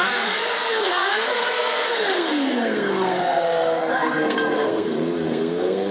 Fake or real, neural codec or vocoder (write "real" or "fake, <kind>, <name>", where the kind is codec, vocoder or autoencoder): fake, codec, SNAC